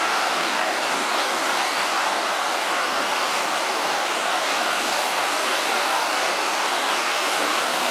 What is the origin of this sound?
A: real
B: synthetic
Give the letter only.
B